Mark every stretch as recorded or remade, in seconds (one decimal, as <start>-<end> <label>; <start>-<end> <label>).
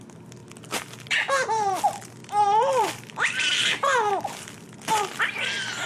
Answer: 0.0-0.4 recorded; 0.4-1.7 remade; 1.7-2.2 recorded; 2.2-4.7 remade; 4.7-5.9 recorded